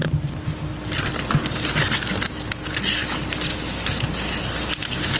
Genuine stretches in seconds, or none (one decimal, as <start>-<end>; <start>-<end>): 0.7-1.1; 1.7-5.2